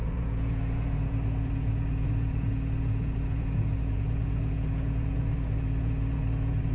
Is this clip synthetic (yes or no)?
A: yes